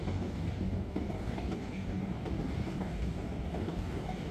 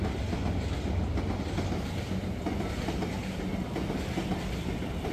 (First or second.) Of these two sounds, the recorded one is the second